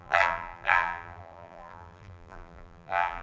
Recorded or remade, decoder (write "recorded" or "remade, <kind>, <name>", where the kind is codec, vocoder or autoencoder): remade, vocoder, BigVGAN v2